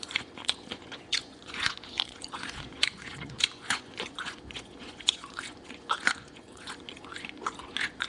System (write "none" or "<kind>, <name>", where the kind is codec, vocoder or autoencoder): vocoder, Vocos